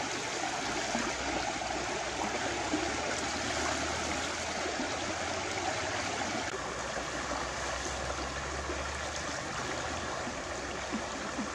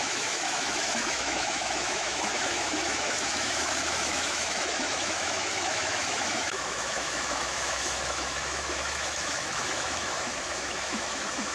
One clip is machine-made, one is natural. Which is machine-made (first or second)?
second